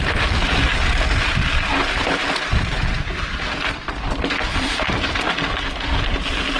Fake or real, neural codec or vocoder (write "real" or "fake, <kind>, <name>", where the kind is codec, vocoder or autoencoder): real